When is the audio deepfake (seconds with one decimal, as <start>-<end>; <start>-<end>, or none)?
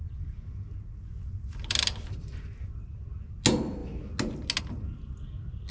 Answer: none